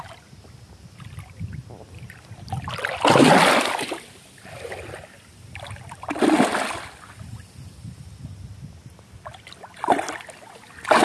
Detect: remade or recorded recorded